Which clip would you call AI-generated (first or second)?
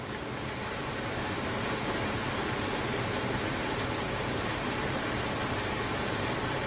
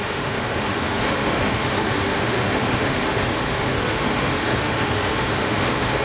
second